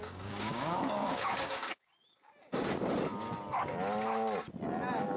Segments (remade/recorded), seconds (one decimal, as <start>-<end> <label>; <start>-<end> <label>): 0.0-1.9 remade; 1.9-5.2 recorded